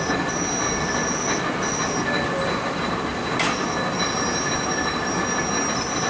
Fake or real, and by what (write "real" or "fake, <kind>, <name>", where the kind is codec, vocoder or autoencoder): real